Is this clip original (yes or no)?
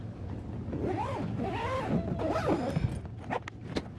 yes